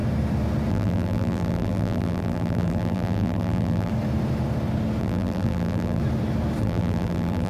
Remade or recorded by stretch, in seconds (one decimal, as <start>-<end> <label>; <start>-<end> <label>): 0.0-0.7 recorded; 0.7-3.9 remade; 3.9-5.0 recorded; 5.0-6.0 remade; 6.0-6.6 recorded; 6.6-7.5 remade